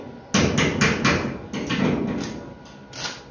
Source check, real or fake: real